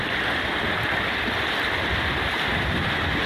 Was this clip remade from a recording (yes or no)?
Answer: no